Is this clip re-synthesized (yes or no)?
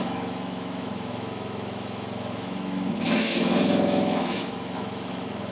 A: yes